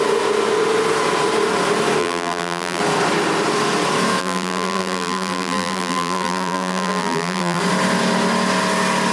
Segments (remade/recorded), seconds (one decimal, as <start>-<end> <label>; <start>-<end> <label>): 0.0-2.0 recorded; 2.0-2.8 remade; 2.8-4.2 recorded; 4.2-7.6 remade; 7.6-9.1 recorded